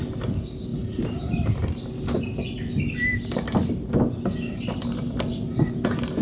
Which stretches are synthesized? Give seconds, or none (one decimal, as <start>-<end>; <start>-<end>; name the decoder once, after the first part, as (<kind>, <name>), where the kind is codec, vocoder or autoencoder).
none